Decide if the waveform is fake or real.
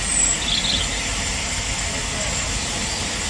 real